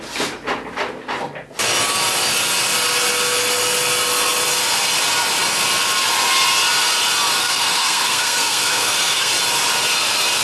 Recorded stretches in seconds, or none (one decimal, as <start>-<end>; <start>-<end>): 0.0-7.4; 9.3-10.4

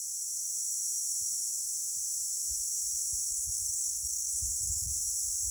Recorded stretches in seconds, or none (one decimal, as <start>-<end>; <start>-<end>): 0.0-3.3; 4.9-5.5

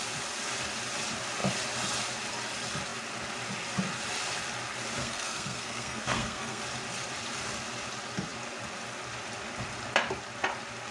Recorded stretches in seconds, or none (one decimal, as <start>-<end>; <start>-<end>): 0.0-5.0; 6.6-10.9

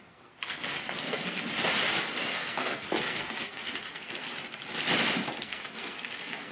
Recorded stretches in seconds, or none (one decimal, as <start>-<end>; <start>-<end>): 1.4-2.2; 4.3-5.4

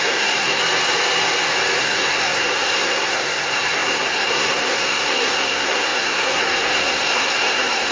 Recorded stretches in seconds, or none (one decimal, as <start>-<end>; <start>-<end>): 0.6-1.8

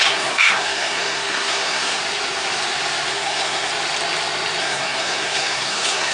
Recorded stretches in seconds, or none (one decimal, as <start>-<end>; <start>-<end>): 2.0-3.1; 3.7-4.6

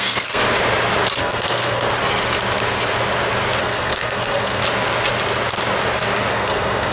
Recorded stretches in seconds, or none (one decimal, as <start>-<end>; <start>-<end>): 0.4-1.2; 1.9-3.6; 4.6-6.3

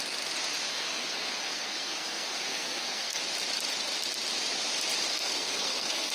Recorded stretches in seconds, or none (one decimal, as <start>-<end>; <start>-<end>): 0.0-0.7; 3.2-5.1